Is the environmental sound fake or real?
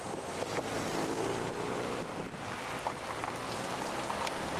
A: real